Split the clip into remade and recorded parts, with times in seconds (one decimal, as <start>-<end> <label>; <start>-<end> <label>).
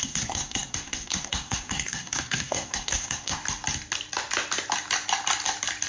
0.0-3.4 remade; 3.4-5.9 recorded